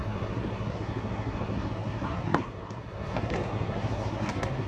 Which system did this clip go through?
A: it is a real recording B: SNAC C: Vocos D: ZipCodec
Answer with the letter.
B